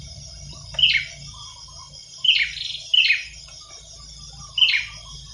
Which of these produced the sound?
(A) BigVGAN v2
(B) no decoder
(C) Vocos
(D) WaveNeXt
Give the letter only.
B